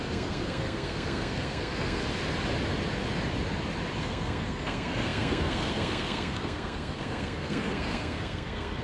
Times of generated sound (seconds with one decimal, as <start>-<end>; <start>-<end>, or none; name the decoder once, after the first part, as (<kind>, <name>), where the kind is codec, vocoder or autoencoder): 0.0-2.0 (codec, SNAC); 4.0-8.8